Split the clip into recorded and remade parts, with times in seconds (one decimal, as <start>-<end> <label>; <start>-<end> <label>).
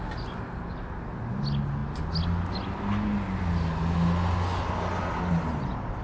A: 0.0-6.0 recorded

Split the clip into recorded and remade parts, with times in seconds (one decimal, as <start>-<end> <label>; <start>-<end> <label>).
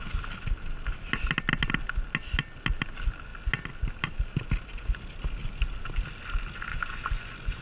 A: 0.0-6.7 recorded; 6.7-7.6 remade